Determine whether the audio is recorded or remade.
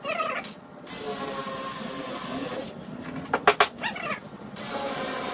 recorded